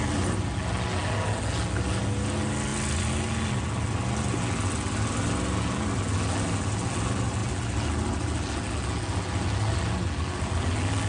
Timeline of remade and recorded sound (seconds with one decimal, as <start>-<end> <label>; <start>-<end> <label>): 0.0-11.1 recorded